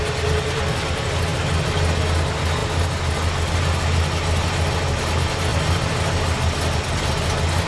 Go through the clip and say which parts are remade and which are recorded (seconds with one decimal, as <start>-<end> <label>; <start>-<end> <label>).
0.0-7.7 recorded